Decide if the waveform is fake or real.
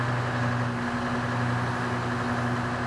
real